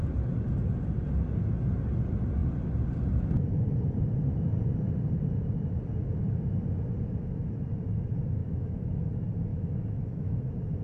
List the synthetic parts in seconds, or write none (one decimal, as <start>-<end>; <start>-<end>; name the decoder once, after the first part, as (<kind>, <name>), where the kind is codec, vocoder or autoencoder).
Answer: 8.4-9.1 (autoencoder, DAC-VAE); 9.5-10.4